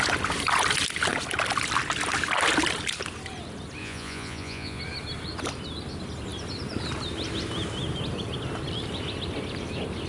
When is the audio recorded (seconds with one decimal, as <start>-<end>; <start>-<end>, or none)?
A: 0.0-3.8; 4.8-10.1